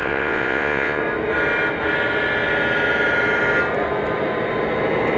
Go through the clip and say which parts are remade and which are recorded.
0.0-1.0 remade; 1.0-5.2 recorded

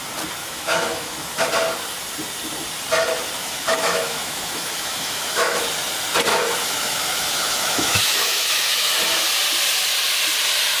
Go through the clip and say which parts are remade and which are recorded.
0.0-0.4 recorded; 0.4-1.5 remade; 1.5-3.4 recorded; 3.4-5.6 remade; 5.6-6.3 recorded; 6.3-8.9 remade; 8.9-10.8 recorded

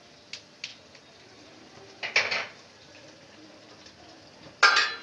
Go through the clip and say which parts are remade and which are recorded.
0.0-5.0 recorded

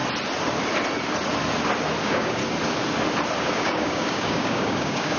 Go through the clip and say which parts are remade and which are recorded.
0.0-2.0 recorded; 2.0-2.4 remade; 2.4-3.4 recorded; 3.4-5.2 remade

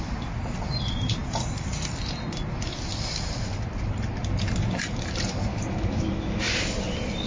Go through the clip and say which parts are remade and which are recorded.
0.0-5.5 recorded; 5.5-6.4 remade; 6.4-7.3 recorded

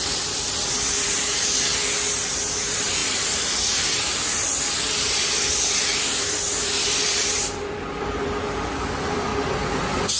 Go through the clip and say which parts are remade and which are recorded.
0.0-1.7 remade; 1.7-2.2 recorded; 2.2-9.3 remade; 9.3-10.2 recorded

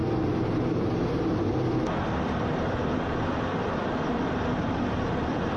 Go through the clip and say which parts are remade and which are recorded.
0.0-3.4 recorded; 3.4-5.6 remade